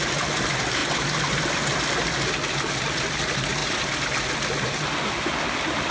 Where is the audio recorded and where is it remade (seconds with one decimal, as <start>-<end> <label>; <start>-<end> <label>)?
0.0-5.9 recorded